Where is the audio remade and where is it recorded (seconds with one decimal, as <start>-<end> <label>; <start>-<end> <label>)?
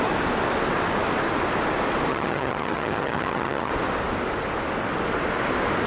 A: 0.0-2.1 recorded; 2.1-3.7 remade; 3.7-5.9 recorded